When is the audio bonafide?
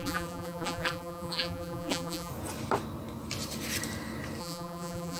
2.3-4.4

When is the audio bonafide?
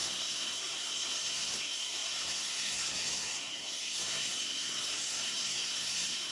none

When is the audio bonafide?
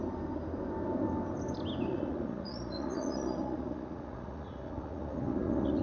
0.0-1.9